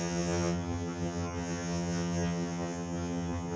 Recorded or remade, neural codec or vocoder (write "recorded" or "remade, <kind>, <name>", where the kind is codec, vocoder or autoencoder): remade, vocoder, HiFi-GAN